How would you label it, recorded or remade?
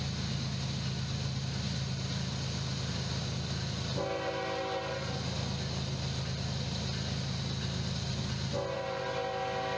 recorded